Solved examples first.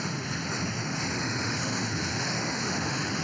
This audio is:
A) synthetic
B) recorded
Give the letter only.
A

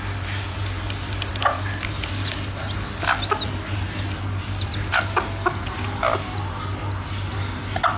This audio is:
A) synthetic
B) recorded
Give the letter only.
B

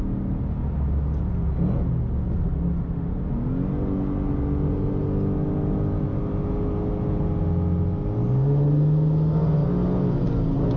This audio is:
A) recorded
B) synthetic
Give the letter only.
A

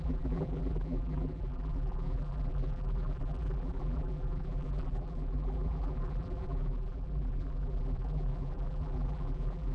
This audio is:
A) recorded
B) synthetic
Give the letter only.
B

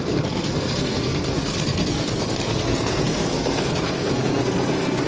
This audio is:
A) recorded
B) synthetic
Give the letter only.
B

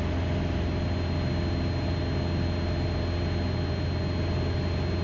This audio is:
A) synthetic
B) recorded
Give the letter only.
B